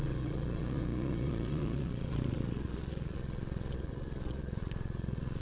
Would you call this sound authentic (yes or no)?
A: no